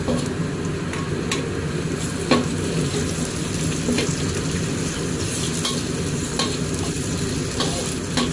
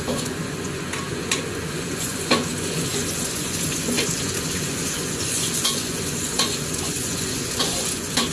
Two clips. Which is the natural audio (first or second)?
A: first